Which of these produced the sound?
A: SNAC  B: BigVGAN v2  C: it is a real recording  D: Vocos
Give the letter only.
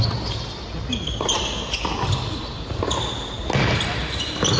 C